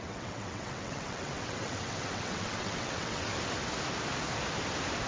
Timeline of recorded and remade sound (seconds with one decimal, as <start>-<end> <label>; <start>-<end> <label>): 0.0-3.3 remade; 3.3-5.1 recorded